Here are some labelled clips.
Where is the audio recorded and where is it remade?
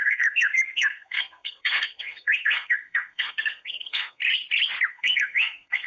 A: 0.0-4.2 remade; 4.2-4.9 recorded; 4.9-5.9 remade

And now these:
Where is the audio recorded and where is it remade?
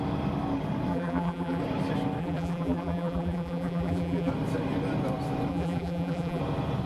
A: 0.0-0.9 recorded; 0.9-1.6 remade; 1.6-2.2 recorded; 2.2-4.3 remade; 4.3-5.5 recorded; 5.5-6.4 remade; 6.4-6.9 recorded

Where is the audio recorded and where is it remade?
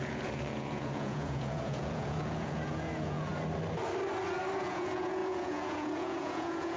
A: 0.0-3.3 remade; 3.3-4.6 recorded; 4.6-6.8 remade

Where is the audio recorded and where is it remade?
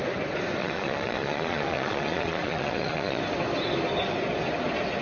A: 0.0-0.6 recorded; 0.6-3.2 remade; 3.2-5.0 recorded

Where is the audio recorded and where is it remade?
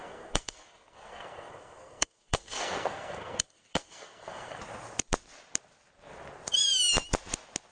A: 0.0-4.6 remade; 4.6-7.7 recorded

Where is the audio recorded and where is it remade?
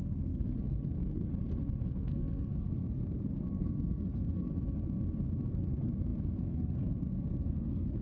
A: 0.0-1.3 remade; 1.3-1.9 recorded; 1.9-4.5 remade; 4.5-5.5 recorded; 5.5-8.0 remade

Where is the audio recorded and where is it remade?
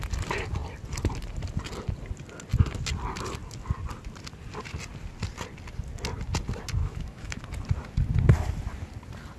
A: 0.0-6.8 recorded; 6.8-7.4 remade; 7.4-9.4 recorded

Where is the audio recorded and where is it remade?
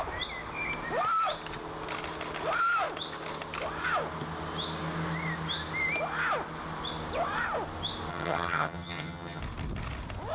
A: 0.0-8.1 recorded; 8.1-9.4 remade; 9.4-10.3 recorded